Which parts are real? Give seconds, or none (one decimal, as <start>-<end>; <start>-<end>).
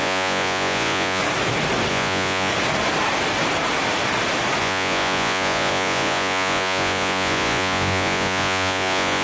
1.2-1.9; 2.5-4.6